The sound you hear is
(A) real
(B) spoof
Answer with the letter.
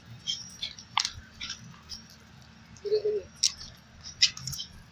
A